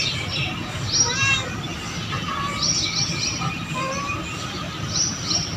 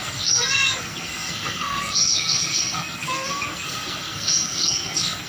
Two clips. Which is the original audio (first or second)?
first